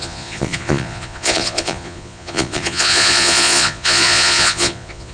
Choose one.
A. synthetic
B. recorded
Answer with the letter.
A